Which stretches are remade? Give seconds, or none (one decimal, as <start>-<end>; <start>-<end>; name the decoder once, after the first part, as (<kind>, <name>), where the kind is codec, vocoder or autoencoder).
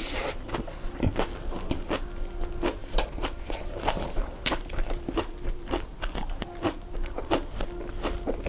2.8-7.3 (vocoder, BigVGAN v2)